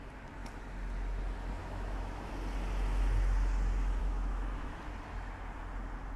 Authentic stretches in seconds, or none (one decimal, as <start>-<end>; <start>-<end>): 0.0-1.6; 2.3-4.0; 4.8-6.2